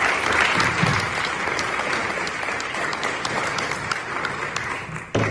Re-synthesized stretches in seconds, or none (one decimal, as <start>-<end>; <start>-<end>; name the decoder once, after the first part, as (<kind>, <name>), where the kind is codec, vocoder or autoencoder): 0.9-4.1 (vocoder, BigVGAN v2)